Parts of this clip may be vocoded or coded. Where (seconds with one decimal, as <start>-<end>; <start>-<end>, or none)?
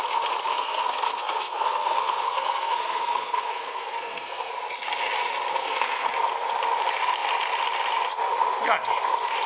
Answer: 0.5-4.5; 5.5-6.1